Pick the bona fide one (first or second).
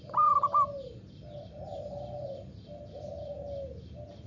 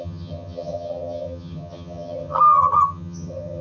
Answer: first